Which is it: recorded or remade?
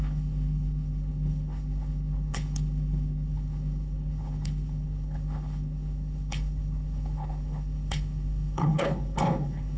remade